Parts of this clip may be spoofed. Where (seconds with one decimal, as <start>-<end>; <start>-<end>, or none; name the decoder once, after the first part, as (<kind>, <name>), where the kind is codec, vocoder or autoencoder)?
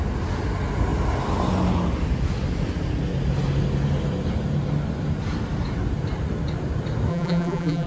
7.1-7.9 (vocoder, BigVGAN v2)